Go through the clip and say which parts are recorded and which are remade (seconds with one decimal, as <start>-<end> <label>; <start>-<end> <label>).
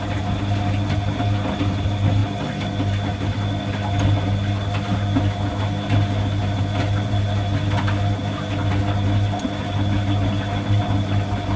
0.0-11.6 recorded